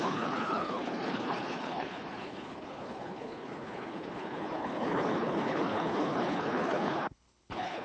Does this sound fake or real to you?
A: fake